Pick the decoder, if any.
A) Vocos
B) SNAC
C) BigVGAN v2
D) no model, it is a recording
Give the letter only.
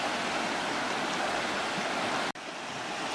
D